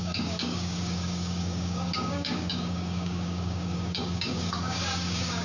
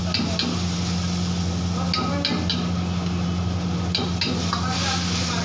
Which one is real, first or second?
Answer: second